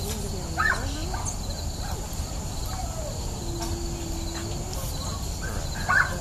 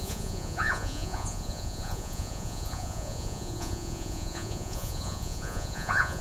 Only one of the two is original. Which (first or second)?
first